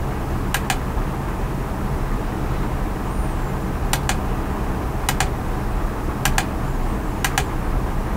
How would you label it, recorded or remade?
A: recorded